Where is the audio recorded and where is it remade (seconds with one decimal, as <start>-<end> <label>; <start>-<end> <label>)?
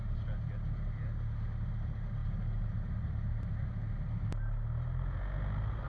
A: 0.0-5.9 recorded